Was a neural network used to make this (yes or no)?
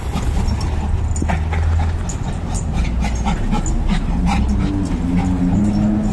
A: no